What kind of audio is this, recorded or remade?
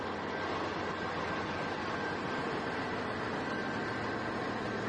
recorded